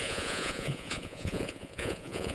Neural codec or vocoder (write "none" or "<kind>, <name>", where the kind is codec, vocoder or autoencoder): vocoder, Vocos